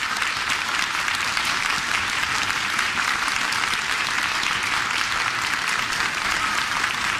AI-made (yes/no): yes